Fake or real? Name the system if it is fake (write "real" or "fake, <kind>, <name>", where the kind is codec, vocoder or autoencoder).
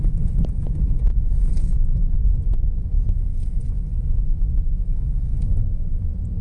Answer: real